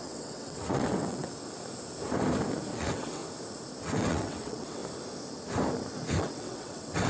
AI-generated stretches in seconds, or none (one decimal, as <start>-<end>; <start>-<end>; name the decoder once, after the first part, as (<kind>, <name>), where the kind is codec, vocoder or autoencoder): 0.0-1.3 (vocoder, WaveNeXt); 2.7-3.2; 3.8-4.8; 6.2-7.1